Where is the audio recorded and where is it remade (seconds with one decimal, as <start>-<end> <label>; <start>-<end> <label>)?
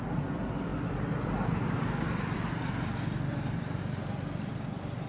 0.0-5.1 recorded